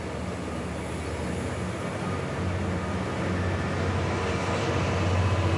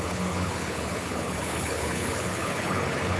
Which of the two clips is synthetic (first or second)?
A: second